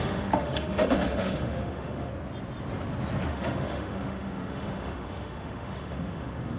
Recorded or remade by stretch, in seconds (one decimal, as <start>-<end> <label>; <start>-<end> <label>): 0.0-2.1 remade; 2.1-3.3 recorded; 3.3-6.6 remade